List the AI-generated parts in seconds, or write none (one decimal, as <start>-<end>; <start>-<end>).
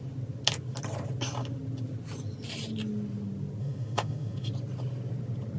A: 3.6-4.5